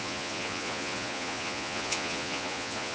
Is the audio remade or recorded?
remade